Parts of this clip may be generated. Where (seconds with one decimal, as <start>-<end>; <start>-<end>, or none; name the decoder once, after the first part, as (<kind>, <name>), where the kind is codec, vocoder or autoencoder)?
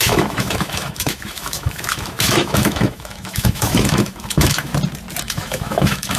0.0-4.7 (autoencoder, DAC-VAE); 5.2-6.2